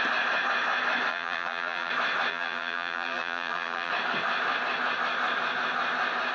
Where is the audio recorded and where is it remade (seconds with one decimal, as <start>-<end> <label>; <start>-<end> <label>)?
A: 0.0-1.1 recorded; 1.1-1.9 remade; 1.9-2.3 recorded; 2.3-3.9 remade; 3.9-6.3 recorded